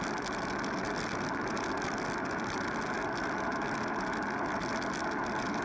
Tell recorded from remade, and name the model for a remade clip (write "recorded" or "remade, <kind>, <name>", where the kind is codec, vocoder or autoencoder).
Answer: recorded